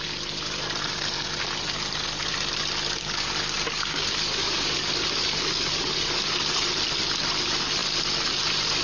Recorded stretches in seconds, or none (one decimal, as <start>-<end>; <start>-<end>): 0.0-3.0; 6.7-8.8